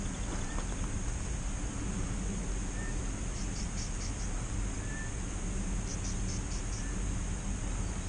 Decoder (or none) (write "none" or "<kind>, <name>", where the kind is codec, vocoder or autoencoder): none